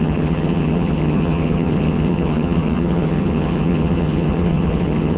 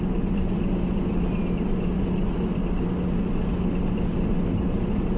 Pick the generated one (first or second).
first